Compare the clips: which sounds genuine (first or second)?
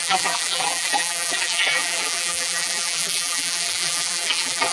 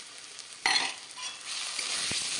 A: second